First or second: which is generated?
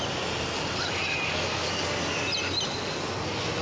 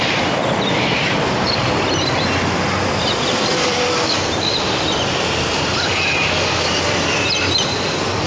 second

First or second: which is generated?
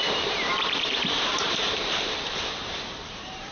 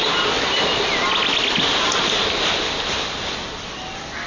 first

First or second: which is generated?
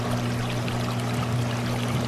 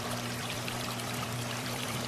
second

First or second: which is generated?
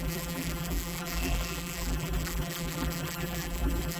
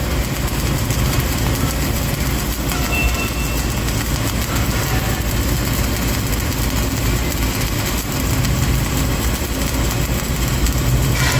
first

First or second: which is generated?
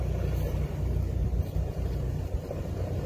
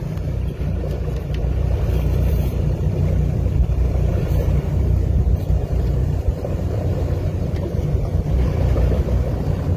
second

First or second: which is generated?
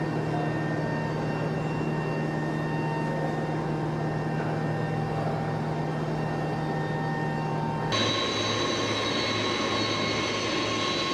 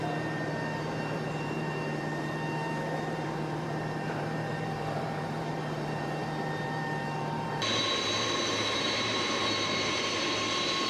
second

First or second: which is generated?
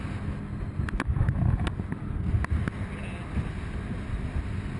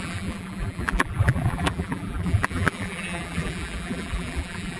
second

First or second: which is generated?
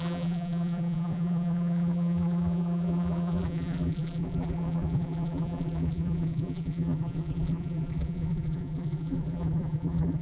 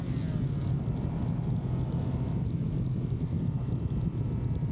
first